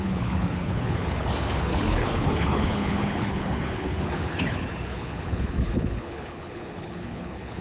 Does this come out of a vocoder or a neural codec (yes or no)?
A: yes